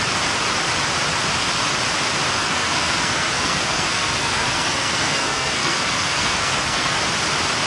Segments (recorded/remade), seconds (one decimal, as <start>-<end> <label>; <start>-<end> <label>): 0.0-2.4 recorded; 2.4-7.0 remade; 7.0-7.7 recorded